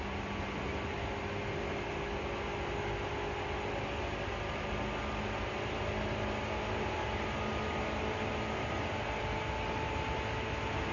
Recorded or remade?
recorded